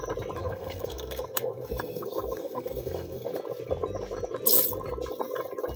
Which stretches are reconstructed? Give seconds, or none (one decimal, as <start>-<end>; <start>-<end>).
0.4-3.3